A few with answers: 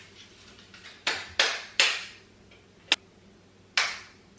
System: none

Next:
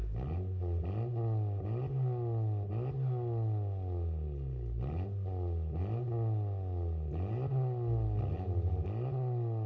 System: none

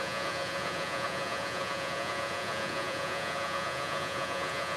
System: vocoder, Vocos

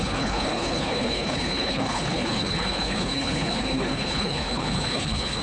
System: codec, HILCodec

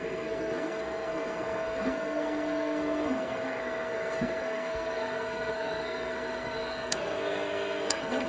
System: codec, SNAC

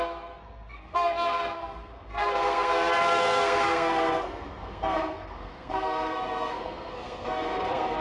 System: codec, SNAC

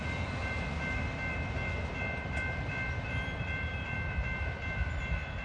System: vocoder, BigVGAN v2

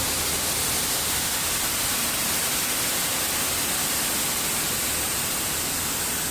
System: vocoder, BigVGAN v2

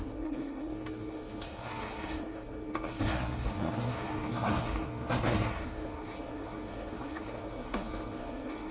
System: codec, SNAC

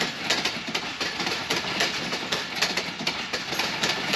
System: none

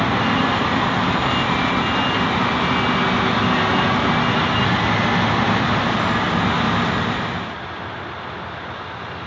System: none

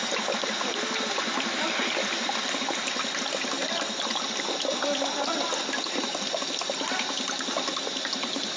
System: none